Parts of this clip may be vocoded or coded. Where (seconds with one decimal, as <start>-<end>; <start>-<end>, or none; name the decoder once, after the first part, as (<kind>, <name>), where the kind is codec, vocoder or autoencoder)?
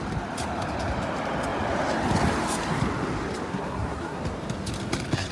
3.5-4.2 (codec, SNAC)